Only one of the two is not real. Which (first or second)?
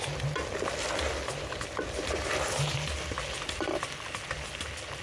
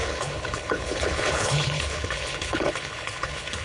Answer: second